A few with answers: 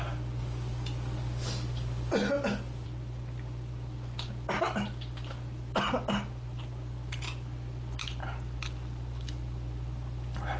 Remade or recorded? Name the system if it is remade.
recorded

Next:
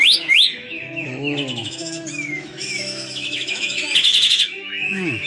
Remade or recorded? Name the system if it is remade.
remade, autoencoder, DAC-VAE